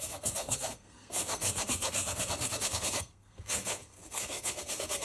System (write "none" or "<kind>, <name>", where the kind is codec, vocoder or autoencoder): codec, SNAC